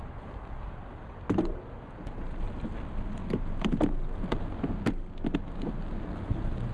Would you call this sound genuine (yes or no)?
yes